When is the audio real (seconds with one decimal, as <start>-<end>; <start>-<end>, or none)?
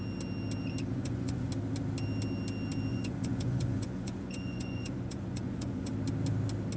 0.0-0.9; 1.5-2.9; 5.9-6.8